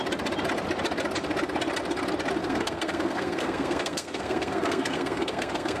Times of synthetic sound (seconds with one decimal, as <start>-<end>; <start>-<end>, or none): 2.4-5.8